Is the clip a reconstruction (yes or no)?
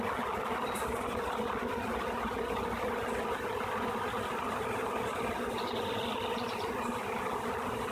no